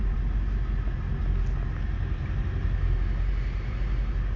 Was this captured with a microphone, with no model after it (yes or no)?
yes